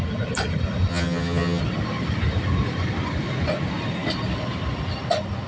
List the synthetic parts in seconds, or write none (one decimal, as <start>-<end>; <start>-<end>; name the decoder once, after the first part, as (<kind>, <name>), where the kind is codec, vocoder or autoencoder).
0.9-1.6 (vocoder, HiFi-GAN)

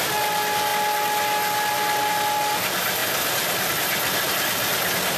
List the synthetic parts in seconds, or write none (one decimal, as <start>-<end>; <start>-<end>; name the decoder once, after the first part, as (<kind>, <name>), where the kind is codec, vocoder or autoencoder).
none

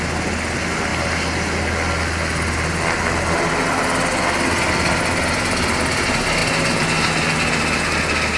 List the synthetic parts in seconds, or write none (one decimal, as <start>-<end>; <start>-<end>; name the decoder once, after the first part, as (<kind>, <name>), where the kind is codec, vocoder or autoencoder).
none

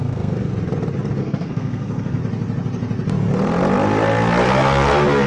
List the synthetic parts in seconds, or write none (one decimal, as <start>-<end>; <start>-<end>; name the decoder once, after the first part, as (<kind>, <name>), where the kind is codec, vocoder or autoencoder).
0.0-0.5 (codec, SNAC); 1.2-2.2

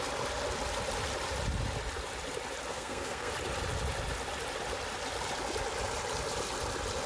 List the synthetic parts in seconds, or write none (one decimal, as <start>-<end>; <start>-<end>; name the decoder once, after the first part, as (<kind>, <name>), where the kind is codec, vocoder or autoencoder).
2.7-3.3 (codec, SNAC)

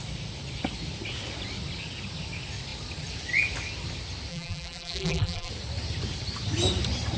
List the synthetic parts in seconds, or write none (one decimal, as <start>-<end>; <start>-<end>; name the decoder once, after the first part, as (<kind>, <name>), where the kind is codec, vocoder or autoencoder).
4.3-5.5 (vocoder, BigVGAN v2)

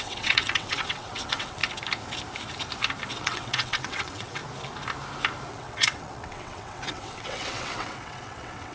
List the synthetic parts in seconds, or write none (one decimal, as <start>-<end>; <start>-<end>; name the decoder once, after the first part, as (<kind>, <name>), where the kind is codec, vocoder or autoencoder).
0.0-1.6 (vocoder, WaveNeXt); 3.1-4.4; 5.5-8.7

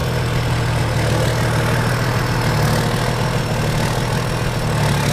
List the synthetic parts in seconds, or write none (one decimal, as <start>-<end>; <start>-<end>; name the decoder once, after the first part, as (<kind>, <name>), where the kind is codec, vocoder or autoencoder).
none